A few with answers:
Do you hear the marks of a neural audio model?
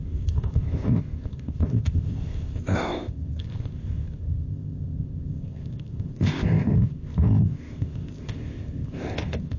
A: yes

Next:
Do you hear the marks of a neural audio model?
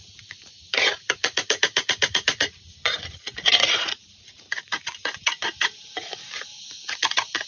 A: yes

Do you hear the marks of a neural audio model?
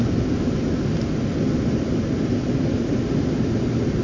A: no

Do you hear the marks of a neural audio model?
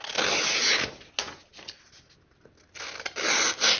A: no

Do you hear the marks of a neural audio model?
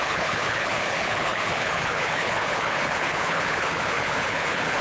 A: yes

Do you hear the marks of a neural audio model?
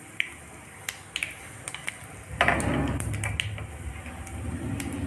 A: no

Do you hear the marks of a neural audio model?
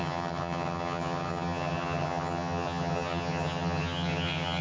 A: yes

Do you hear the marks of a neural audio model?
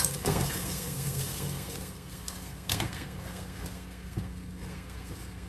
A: yes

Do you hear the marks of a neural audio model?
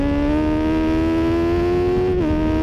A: no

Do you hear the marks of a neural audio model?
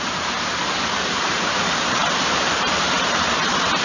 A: yes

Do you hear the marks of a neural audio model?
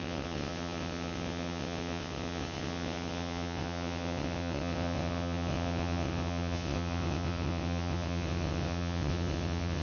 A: yes